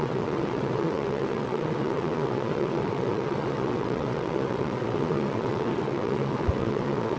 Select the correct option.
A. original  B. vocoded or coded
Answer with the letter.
B